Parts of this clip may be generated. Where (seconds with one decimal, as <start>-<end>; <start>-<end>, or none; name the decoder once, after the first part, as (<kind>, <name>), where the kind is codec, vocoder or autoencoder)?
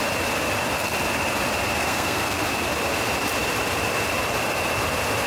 1.8-2.4 (codec, SNAC)